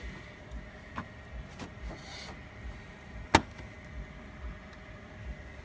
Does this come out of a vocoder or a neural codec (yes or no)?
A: no